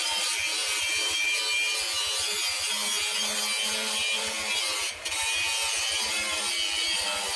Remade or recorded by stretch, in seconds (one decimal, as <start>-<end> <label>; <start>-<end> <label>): 0.0-7.4 recorded